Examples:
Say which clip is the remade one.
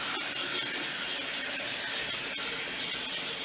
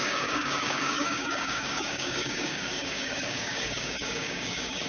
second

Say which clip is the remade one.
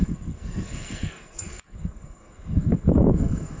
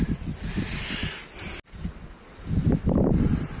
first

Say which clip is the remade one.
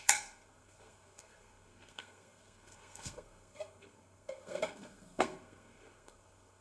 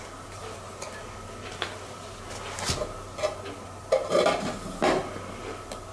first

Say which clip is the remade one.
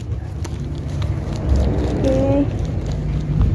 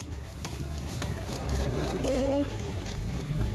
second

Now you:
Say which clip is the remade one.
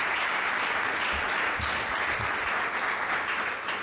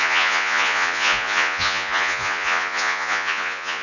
second